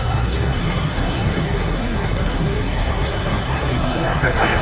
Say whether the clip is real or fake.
fake